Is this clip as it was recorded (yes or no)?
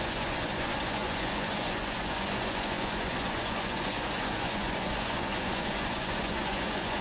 no